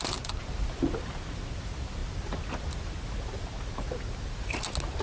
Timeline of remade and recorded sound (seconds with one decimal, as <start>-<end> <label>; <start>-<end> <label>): 0.0-5.0 recorded